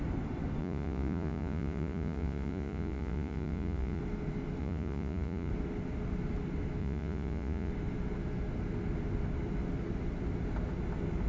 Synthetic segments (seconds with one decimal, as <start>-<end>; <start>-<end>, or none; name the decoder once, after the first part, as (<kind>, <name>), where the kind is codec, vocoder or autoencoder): 0.6-4.0 (vocoder, Vocos); 4.6-5.5; 6.8-7.7

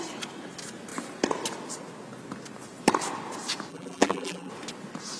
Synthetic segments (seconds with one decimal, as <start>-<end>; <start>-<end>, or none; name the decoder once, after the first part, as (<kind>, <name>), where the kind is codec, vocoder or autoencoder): 3.7-4.5 (vocoder, BigVGAN v2)

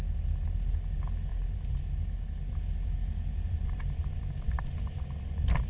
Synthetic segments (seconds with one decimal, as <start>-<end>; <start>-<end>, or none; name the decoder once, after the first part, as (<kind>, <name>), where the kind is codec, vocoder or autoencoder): 1.3-4.7 (vocoder, BigVGAN v2)

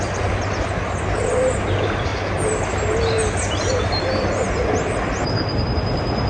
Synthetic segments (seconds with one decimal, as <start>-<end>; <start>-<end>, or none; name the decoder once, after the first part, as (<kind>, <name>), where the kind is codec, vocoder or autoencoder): none

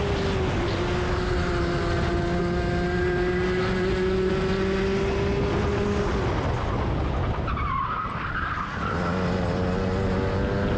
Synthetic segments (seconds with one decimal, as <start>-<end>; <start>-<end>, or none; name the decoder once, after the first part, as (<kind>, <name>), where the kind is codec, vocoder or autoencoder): none

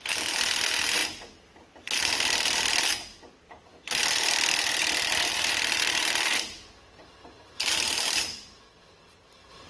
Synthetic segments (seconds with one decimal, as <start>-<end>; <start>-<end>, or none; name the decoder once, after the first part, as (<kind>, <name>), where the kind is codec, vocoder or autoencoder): none

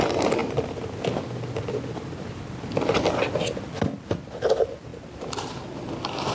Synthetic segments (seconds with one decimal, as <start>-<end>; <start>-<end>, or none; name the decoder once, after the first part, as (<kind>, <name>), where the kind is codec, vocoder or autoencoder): none